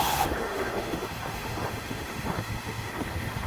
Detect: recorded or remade remade